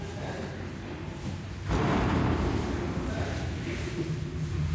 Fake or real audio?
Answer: fake